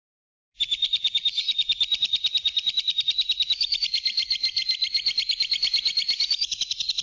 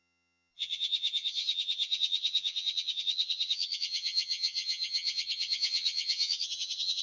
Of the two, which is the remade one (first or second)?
second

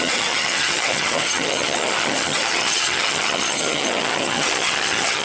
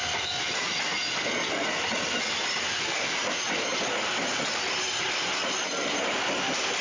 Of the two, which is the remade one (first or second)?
first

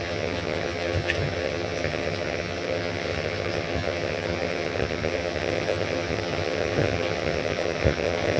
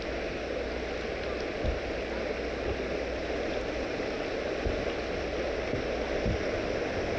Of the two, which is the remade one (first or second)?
first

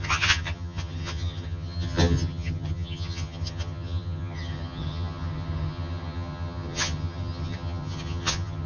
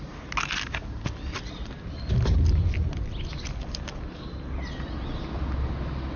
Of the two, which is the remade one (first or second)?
first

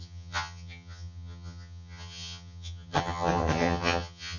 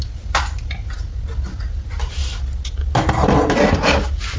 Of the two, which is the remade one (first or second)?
first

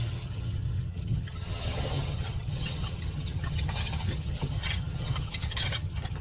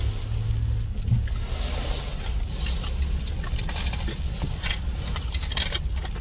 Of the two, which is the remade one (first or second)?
first